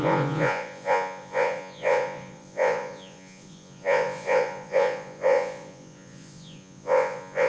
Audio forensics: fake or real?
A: fake